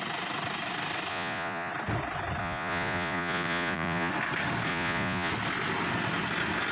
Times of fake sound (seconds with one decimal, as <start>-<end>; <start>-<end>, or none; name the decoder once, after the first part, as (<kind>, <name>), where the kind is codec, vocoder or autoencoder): 1.1-1.7 (vocoder, Vocos); 2.4-4.1; 4.7-5.3